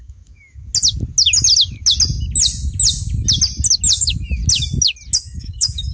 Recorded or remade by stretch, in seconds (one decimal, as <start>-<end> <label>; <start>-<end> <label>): 0.0-0.7 remade; 0.7-4.0 recorded; 4.0-4.4 remade; 4.4-5.2 recorded; 5.2-5.9 remade